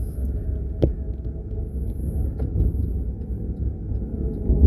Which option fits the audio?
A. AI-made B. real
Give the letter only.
B